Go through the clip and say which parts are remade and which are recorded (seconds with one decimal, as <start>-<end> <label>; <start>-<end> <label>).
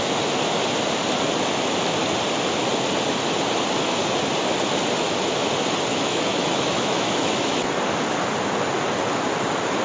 0.0-5.9 recorded; 5.9-7.7 remade; 7.7-9.8 recorded